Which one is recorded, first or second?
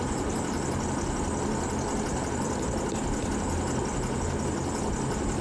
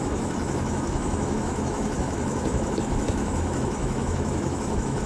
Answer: first